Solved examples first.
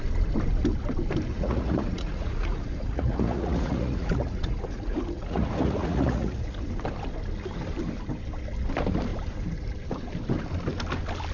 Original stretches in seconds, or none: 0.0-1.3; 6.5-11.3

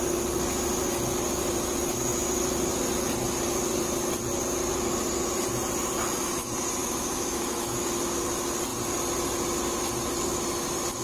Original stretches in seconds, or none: 0.0-6.8; 8.2-11.0

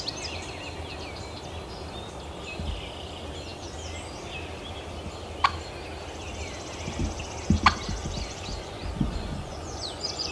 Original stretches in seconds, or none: 0.0-8.0

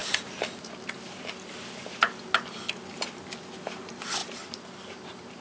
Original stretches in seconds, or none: 0.0-4.2

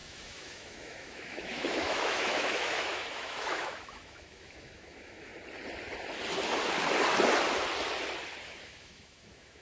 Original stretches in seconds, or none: 5.3-8.6

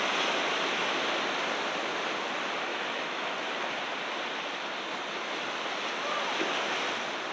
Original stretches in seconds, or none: 0.0-2.7; 3.3-7.3

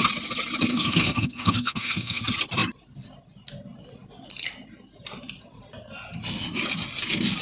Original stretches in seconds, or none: 0.0-0.7; 2.2-7.4